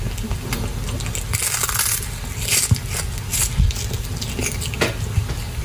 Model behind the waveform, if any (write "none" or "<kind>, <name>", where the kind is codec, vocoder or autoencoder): none